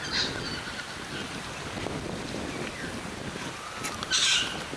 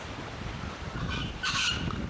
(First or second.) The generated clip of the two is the second